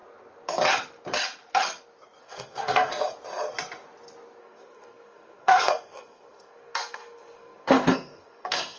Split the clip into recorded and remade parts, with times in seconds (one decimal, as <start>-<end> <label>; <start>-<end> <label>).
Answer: 0.0-2.2 recorded; 2.2-2.9 remade; 2.9-4.4 recorded; 4.4-8.8 remade

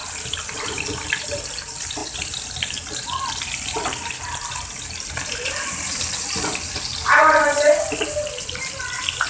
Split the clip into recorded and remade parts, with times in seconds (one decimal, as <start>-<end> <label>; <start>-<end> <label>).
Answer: 0.0-1.4 remade; 1.4-2.0 recorded; 2.0-3.3 remade; 3.3-3.9 recorded; 3.9-6.8 remade; 6.8-9.3 recorded

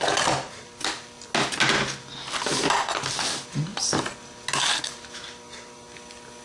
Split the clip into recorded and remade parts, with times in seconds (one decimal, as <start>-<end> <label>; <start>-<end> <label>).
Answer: 0.0-6.4 recorded